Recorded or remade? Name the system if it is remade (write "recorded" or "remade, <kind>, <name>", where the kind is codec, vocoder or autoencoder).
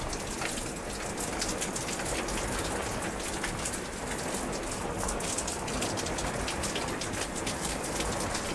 recorded